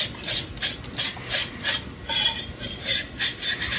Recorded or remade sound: recorded